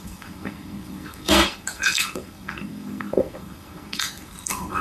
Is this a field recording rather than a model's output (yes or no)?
no